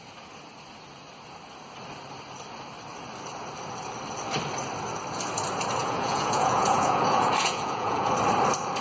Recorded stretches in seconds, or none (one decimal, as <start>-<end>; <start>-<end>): 0.0-5.8; 8.1-8.8